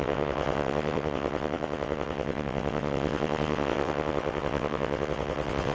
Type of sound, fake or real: fake